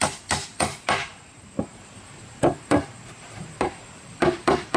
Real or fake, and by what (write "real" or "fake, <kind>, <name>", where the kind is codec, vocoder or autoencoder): fake, vocoder, BigVGAN v2